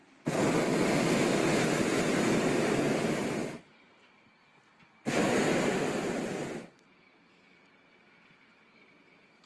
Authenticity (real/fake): real